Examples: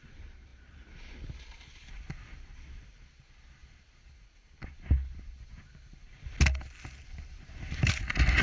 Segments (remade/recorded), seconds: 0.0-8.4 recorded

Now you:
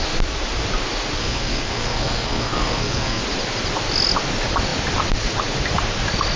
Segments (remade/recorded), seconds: 0.0-1.2 recorded; 1.2-3.2 remade; 3.2-6.4 recorded

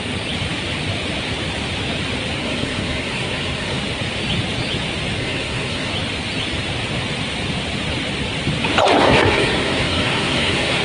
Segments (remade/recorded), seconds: 0.0-2.4 recorded; 2.4-3.8 remade; 3.8-5.2 recorded; 5.2-5.9 remade; 5.9-9.0 recorded; 9.0-10.8 remade

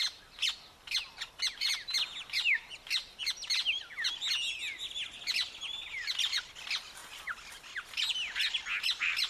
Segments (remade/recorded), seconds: 0.0-9.3 recorded